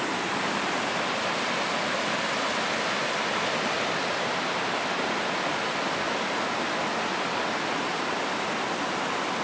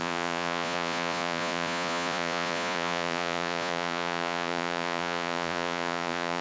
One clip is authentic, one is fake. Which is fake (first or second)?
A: second